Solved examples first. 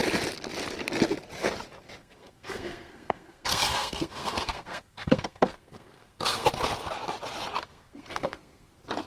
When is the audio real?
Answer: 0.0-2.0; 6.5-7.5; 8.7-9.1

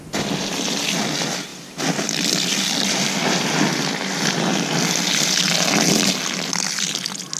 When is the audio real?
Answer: 0.0-7.4

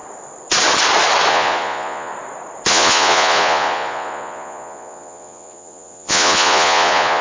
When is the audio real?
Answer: 0.0-1.3; 2.1-2.7

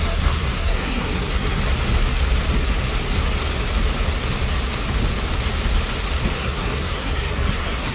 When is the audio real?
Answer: 1.6-6.3

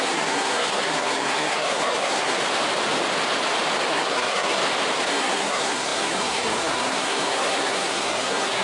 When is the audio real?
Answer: 2.4-3.9; 4.6-5.1